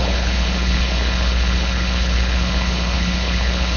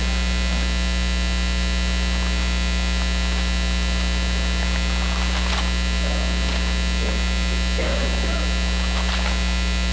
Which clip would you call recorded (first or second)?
second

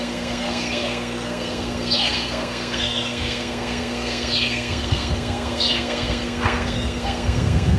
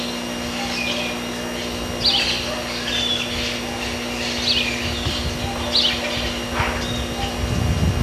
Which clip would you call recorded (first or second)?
second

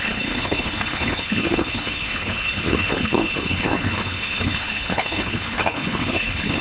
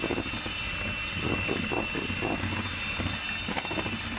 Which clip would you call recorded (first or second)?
second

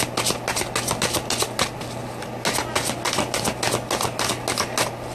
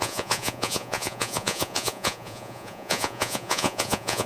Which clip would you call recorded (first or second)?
first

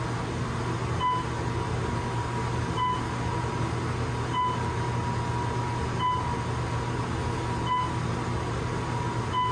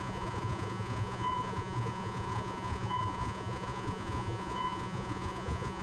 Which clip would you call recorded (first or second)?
first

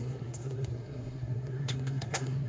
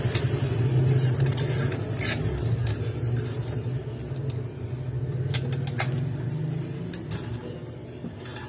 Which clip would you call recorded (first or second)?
second